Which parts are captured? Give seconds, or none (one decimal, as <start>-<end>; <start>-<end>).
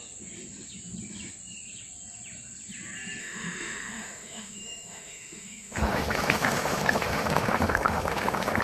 0.0-3.2